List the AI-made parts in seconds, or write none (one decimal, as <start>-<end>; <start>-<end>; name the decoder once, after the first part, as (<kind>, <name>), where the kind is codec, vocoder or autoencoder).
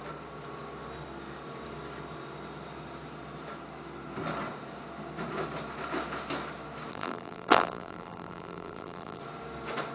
6.9-9.2 (vocoder, BigVGAN v2)